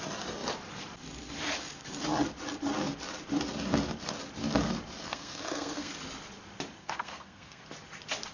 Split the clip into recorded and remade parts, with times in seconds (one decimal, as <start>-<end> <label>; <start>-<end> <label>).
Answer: 0.0-5.1 recorded; 5.1-5.9 remade; 5.9-6.8 recorded; 6.8-7.6 remade; 7.6-8.3 recorded